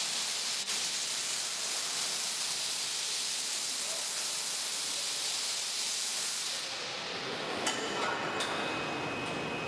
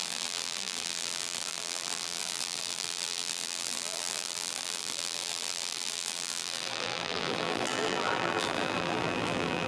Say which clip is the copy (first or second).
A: second